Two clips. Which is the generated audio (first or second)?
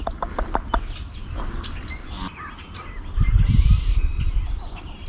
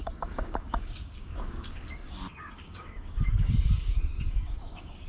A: second